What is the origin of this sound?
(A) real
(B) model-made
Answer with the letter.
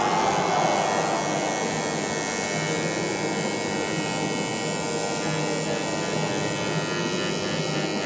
A